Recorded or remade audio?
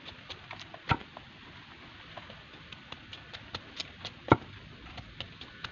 recorded